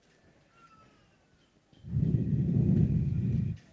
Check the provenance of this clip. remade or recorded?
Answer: recorded